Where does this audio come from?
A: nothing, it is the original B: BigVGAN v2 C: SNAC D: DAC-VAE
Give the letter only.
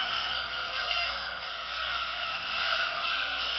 C